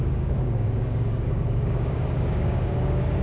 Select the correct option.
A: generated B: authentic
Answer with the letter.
A